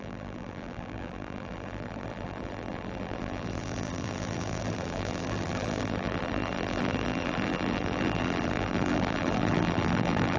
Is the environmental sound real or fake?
fake